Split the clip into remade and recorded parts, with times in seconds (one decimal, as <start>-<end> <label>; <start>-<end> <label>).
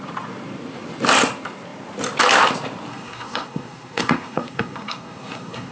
0.0-2.9 recorded; 2.9-5.7 remade